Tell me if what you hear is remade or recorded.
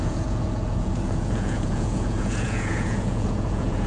remade